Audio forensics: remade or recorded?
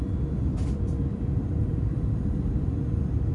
remade